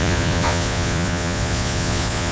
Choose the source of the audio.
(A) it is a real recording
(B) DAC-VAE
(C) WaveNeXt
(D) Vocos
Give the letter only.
D